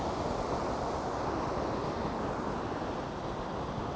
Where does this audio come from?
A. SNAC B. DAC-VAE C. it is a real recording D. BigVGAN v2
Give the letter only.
C